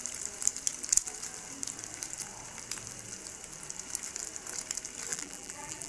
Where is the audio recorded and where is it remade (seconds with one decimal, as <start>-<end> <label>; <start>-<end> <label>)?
0.0-5.1 recorded; 5.1-5.9 remade